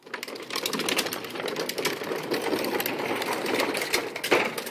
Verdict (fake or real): real